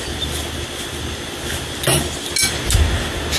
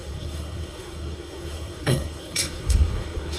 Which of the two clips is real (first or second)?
first